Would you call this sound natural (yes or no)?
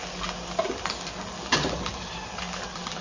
yes